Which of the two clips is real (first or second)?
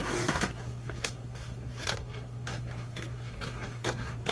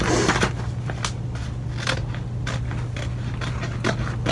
second